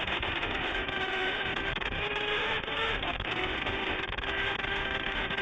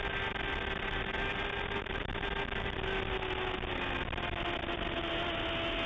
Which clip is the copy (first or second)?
first